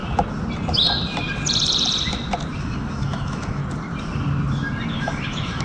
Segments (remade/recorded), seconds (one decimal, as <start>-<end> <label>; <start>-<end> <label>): 0.0-2.6 recorded; 2.6-3.6 remade; 3.6-4.9 recorded; 4.9-5.6 remade